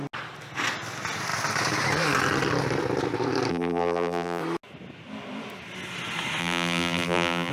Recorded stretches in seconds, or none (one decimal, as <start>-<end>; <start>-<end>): 0.0-3.5; 4.4-6.4